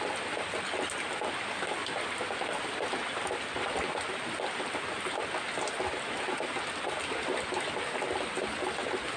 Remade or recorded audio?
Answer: recorded